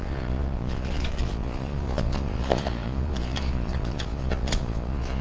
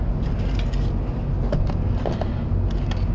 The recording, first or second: second